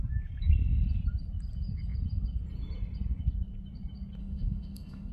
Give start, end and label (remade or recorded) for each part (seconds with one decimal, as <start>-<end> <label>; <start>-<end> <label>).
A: 0.0-4.2 recorded; 4.2-5.1 remade